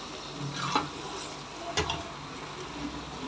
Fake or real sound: real